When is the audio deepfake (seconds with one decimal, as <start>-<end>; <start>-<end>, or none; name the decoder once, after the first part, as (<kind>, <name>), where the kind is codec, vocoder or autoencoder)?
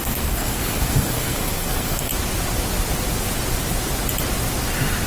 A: 0.0-2.1 (codec, SNAC)